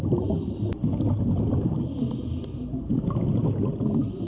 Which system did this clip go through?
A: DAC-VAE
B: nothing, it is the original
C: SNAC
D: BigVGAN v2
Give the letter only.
B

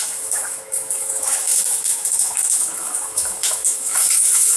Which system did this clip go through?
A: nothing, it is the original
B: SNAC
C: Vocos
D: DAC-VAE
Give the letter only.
D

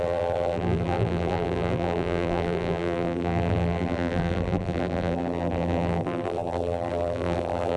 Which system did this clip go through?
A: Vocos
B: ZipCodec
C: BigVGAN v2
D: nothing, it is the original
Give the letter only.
C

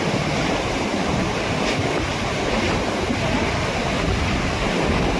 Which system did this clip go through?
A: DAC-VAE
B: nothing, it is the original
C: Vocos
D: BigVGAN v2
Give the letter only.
D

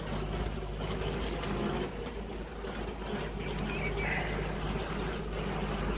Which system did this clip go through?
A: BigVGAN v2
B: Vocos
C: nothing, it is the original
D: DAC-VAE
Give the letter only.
C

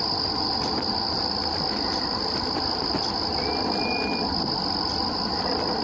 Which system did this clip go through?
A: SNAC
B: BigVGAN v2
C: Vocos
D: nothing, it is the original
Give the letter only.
D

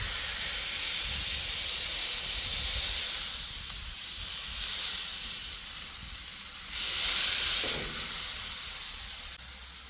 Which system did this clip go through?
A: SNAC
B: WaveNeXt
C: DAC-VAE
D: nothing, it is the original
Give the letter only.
D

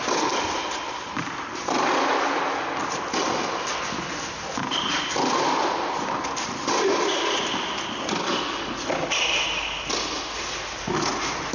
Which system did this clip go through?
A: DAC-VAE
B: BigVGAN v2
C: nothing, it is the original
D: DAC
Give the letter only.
C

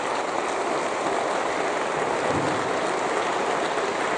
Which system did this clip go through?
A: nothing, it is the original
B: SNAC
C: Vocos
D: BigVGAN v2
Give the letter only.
A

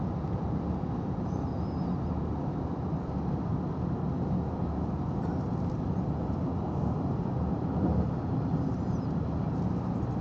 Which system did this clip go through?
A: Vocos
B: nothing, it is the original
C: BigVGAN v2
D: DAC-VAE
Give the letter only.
B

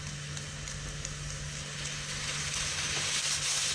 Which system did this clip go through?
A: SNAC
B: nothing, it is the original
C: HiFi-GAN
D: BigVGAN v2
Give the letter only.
B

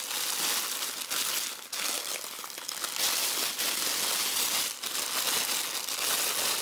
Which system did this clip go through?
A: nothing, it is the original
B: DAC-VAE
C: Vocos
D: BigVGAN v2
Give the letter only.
A